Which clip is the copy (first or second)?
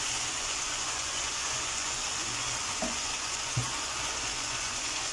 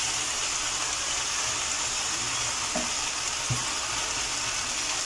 first